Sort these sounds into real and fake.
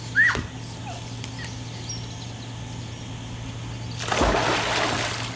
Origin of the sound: real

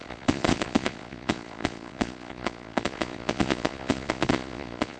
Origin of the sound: fake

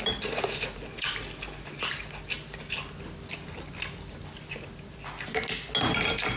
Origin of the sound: real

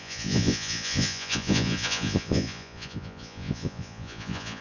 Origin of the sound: fake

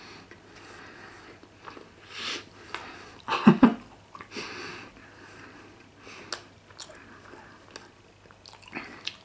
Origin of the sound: real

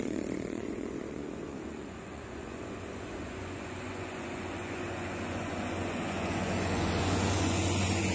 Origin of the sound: fake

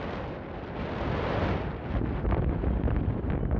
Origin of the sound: real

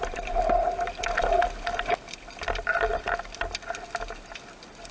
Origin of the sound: real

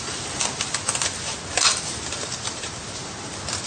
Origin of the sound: real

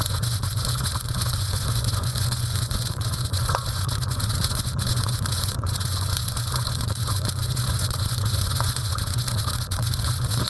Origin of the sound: fake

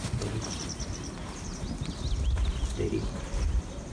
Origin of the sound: real